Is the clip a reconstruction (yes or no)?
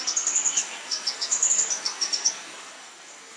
yes